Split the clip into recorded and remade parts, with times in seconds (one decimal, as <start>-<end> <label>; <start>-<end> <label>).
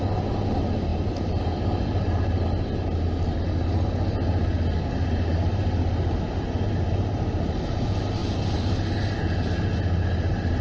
0.0-10.6 recorded